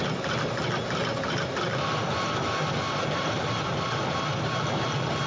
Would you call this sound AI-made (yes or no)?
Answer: no